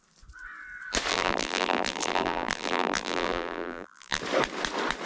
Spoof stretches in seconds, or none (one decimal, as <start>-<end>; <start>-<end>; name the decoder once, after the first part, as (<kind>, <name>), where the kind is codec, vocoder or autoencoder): 1.1-4.2 (vocoder, BigVGAN v2)